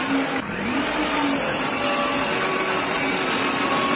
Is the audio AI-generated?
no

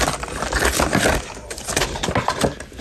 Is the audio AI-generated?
no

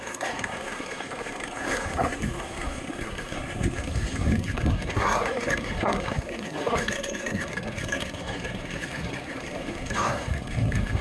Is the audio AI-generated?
yes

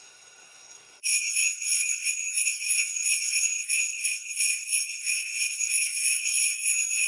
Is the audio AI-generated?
yes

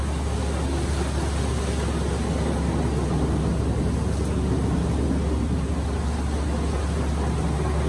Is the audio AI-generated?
no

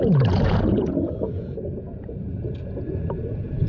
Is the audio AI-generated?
yes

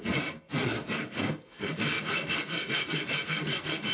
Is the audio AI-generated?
yes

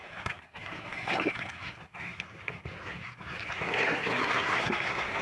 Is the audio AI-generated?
yes